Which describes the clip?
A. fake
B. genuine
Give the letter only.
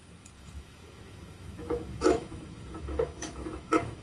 A